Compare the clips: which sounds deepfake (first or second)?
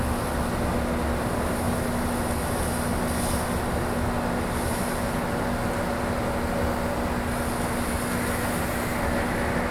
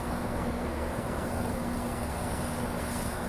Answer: second